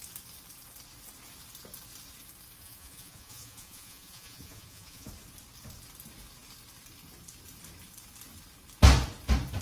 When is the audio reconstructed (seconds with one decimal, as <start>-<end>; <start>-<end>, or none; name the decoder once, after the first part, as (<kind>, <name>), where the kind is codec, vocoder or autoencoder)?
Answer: 2.6-5.1 (vocoder, Vocos)